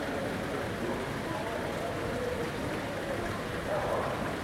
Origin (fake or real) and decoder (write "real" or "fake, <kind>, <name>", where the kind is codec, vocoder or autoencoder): fake, vocoder, BigVGAN v2